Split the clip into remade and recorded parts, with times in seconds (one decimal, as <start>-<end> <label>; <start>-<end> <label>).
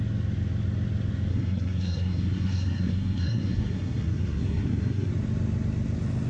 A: 0.0-1.3 recorded; 1.3-5.1 remade; 5.1-6.3 recorded